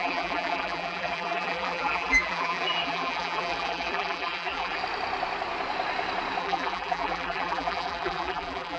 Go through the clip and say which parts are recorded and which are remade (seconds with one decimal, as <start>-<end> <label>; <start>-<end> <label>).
0.0-4.8 remade; 4.8-6.4 recorded; 6.4-8.8 remade